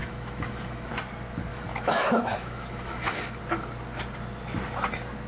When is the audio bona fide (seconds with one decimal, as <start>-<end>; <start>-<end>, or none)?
0.9-1.5; 3.4-5.3